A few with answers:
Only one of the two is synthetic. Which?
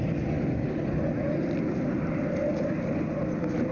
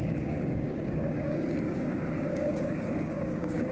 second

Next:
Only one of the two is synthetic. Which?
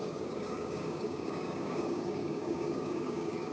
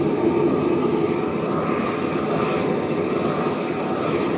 first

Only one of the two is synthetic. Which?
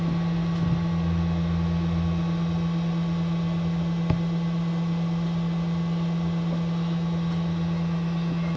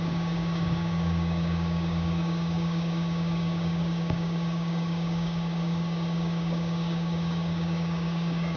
second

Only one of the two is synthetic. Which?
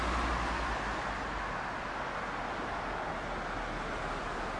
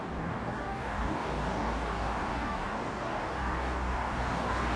second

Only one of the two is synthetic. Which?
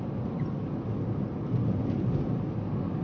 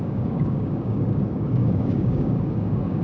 second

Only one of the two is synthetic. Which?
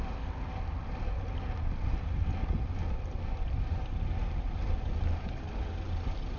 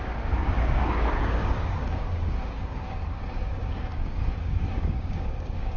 second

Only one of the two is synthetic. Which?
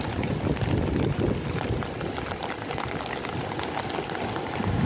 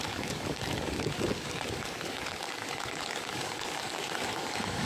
second